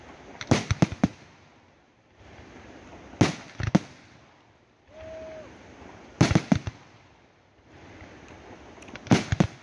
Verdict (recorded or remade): recorded